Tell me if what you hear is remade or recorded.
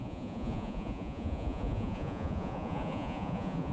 remade